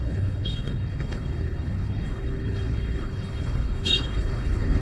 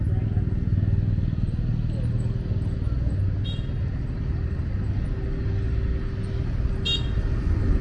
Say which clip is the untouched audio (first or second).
second